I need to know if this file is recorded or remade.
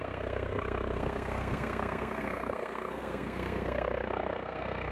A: remade